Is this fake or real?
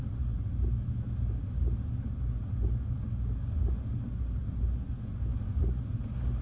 real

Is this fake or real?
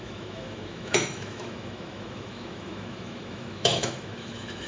fake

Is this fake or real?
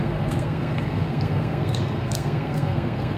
fake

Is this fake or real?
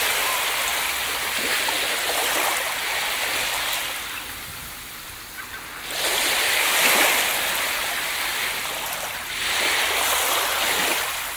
real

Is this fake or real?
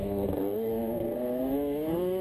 fake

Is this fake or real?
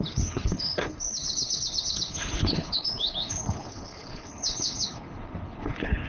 fake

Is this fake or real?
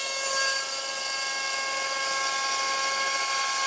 real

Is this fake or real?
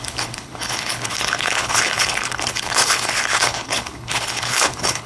fake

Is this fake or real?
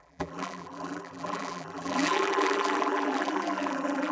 fake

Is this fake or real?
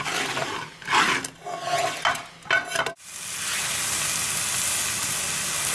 real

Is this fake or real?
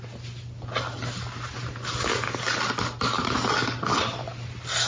real